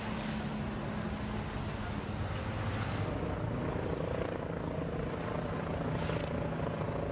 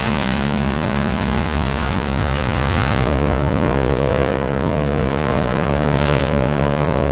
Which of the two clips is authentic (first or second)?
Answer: first